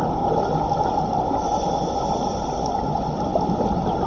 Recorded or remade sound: recorded